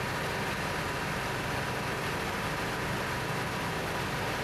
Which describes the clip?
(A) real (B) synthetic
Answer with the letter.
A